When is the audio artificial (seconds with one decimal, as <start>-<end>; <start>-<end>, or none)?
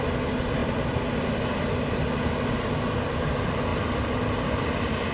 0.6-1.2